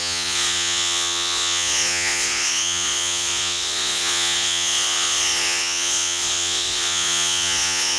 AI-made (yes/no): yes